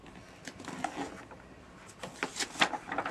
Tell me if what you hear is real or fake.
real